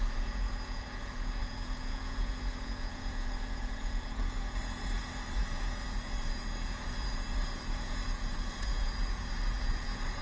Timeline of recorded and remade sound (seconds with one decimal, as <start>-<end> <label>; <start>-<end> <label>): 0.0-10.2 remade

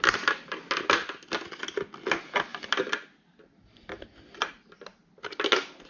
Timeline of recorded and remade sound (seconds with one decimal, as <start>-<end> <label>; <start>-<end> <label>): 0.0-5.9 recorded